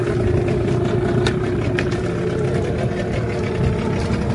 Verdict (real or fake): real